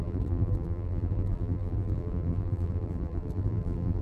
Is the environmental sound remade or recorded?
remade